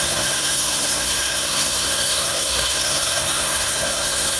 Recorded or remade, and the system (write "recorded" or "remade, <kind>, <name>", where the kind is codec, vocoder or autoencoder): remade, codec, SNAC